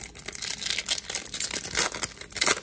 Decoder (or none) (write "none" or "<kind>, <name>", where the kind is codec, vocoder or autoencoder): none